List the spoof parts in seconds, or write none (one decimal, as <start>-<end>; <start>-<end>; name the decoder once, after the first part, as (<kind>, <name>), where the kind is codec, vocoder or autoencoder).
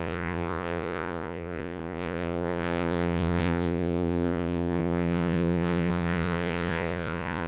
0.0-7.5 (vocoder, Vocos)